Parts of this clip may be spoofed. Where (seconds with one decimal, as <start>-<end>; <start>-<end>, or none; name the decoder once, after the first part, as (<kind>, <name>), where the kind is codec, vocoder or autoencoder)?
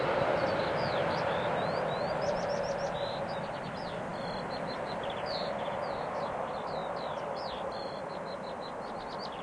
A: none